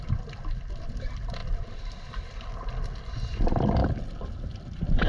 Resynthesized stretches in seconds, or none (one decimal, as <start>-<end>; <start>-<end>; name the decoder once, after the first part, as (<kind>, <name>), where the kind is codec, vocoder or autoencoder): none